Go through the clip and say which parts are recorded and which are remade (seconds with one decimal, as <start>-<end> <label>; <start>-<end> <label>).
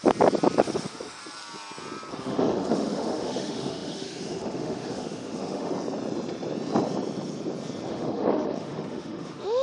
0.0-0.6 recorded; 0.6-1.2 remade; 1.2-2.1 recorded; 2.1-5.7 remade; 5.7-7.9 recorded; 7.9-9.6 remade